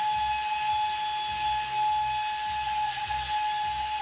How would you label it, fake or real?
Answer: real